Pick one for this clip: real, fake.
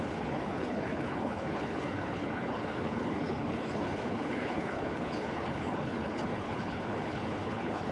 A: fake